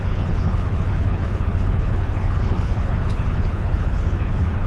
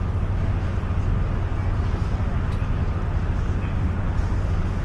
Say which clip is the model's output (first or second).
first